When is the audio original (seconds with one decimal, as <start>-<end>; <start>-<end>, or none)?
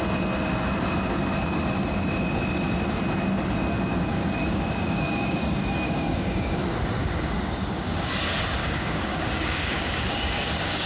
0.0-3.9; 6.6-7.0; 8.1-8.6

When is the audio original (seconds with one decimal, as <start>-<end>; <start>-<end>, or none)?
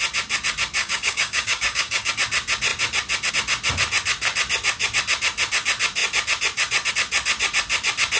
0.0-0.8; 2.1-8.2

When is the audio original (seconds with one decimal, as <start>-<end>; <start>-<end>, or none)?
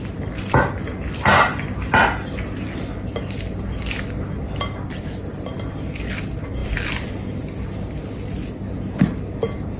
0.0-9.8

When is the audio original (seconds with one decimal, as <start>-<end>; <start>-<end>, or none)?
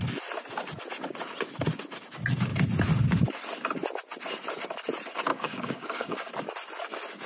0.0-5.3; 6.3-7.3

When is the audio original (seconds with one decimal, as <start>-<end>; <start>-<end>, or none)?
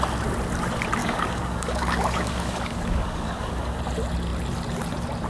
0.0-1.0; 3.8-5.3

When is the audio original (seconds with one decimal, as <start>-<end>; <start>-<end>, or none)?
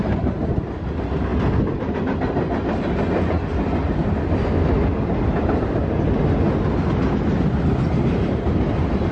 0.0-9.1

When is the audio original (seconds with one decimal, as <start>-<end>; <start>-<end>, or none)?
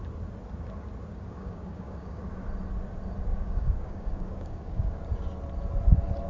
0.0-1.1; 2.2-3.3; 5.0-6.3